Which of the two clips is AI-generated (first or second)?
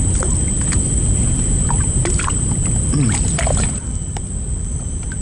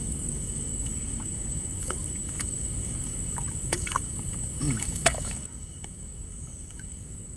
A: second